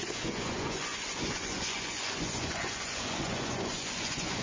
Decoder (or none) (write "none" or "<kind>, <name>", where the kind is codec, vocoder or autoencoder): vocoder, Vocos